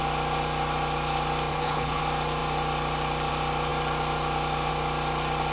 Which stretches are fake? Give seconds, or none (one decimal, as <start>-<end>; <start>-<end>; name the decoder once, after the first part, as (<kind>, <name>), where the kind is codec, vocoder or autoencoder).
1.5-2.0 (codec, HILCodec)